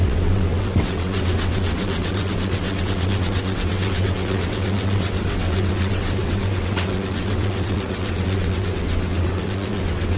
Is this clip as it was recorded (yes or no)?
no